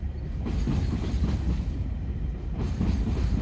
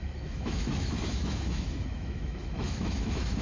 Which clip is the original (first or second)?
first